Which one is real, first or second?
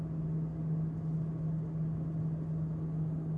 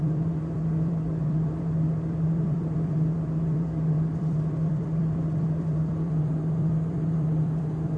first